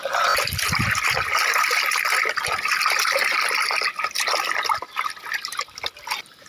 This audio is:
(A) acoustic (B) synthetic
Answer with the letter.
B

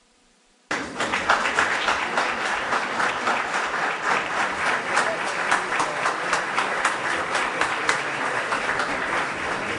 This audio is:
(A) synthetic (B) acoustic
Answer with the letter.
A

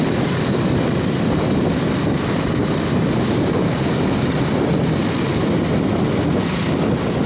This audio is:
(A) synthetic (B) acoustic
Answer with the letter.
B